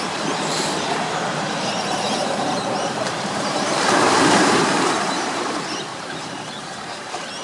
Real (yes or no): no